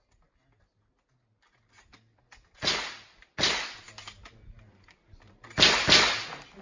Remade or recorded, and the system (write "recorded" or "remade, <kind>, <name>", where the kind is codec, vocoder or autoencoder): recorded